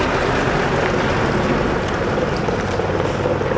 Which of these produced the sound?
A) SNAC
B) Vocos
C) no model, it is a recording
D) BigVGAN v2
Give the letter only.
C